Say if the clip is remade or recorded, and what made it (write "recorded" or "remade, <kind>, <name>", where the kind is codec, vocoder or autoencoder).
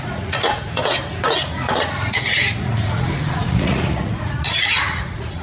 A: remade, vocoder, Vocos